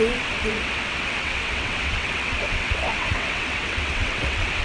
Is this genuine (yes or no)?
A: no